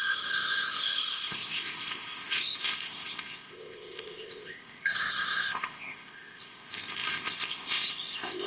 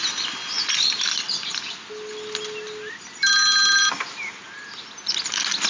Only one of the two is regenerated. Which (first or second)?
first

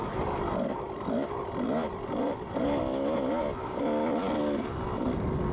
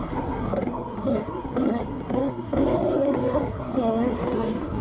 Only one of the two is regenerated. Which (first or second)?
second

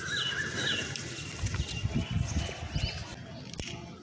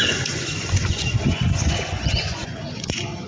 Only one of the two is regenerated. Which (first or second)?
second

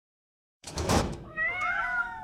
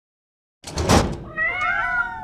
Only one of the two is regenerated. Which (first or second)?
first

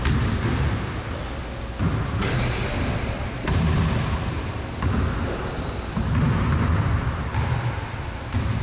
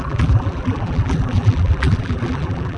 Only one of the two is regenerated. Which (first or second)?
second